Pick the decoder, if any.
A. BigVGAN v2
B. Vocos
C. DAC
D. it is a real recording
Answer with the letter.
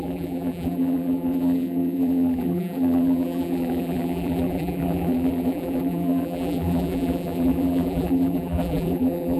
A